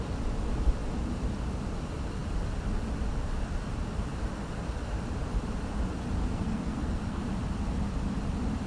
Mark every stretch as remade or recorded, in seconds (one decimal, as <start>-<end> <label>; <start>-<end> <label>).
0.0-6.2 recorded; 6.2-7.2 remade; 7.2-8.7 recorded